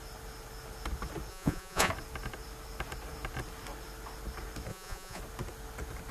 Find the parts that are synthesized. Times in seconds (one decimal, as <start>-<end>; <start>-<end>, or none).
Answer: 1.3-1.9; 4.7-5.2